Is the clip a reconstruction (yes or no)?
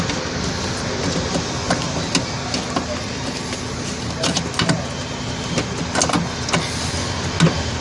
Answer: no